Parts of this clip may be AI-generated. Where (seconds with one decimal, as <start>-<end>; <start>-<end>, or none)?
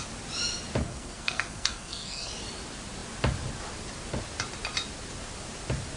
0.8-2.3